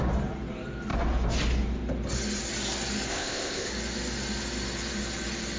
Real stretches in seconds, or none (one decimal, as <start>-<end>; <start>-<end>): 0.0-3.1; 3.7-5.6